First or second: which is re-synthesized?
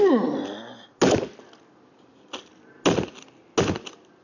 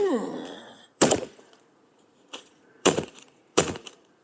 second